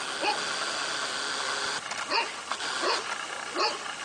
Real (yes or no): yes